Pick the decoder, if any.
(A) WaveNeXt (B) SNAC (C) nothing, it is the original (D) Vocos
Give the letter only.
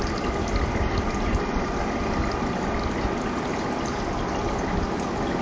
C